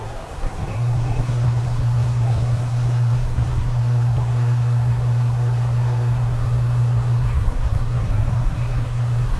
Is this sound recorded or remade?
remade